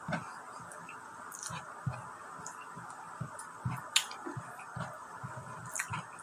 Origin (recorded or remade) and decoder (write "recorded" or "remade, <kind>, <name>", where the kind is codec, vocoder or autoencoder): recorded